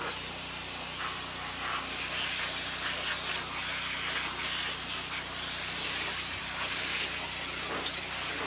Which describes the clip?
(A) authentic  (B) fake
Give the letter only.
A